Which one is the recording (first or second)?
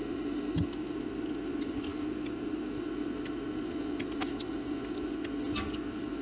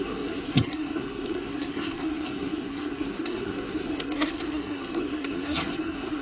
first